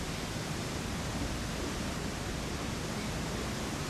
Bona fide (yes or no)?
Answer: yes